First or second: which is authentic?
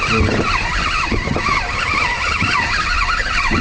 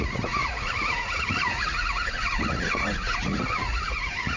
first